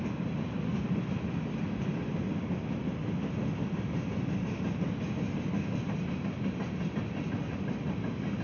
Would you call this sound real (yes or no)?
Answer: yes